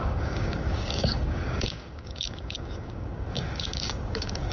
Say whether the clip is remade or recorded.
remade